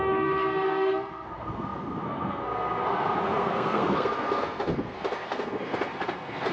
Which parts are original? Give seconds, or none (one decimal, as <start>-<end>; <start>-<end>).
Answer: none